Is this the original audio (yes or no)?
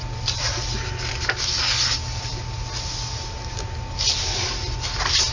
yes